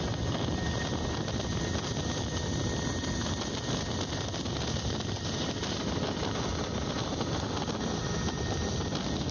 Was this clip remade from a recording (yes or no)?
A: no